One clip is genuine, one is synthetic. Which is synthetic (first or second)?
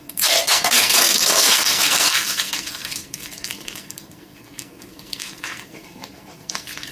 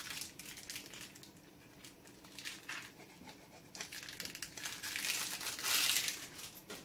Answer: first